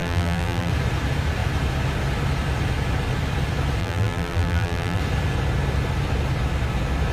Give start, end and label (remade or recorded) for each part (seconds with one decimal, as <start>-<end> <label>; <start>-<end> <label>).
0.0-0.7 remade; 0.7-3.8 recorded; 3.8-5.0 remade; 5.0-7.1 recorded